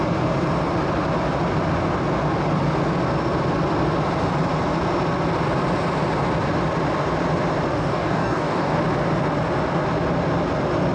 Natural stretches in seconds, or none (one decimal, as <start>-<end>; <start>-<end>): 0.0-7.7; 8.8-10.9